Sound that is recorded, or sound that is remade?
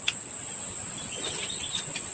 recorded